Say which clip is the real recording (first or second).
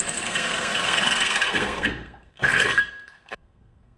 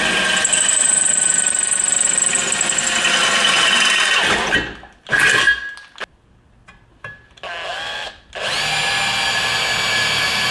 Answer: second